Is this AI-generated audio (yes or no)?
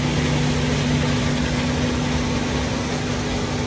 no